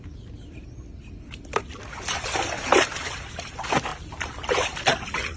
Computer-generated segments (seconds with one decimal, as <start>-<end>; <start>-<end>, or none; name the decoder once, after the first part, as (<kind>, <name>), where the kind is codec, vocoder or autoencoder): 3.9-4.8 (vocoder, BigVGAN v2)